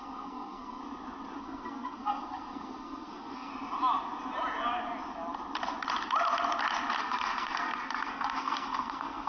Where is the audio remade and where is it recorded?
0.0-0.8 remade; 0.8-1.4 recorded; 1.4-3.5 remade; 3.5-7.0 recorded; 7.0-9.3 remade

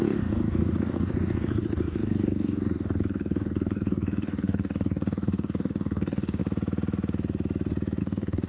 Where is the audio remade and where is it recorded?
0.0-6.4 remade; 6.4-8.0 recorded; 8.0-8.5 remade